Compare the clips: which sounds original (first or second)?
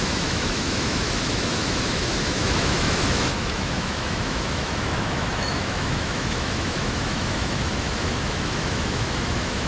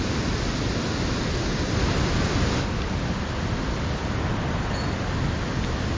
second